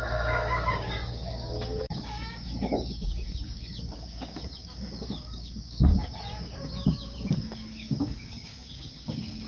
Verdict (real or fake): fake